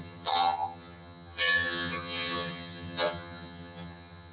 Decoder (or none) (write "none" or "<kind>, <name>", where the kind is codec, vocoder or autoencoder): vocoder, HiFi-GAN